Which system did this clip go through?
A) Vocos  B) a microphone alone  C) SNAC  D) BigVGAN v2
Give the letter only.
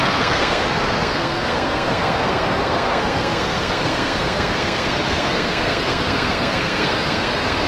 C